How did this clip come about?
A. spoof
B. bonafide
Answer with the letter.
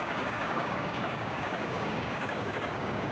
A